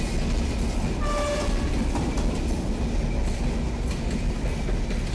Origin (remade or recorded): recorded